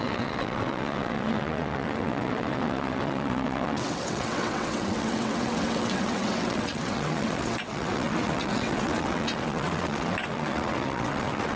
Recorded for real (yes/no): no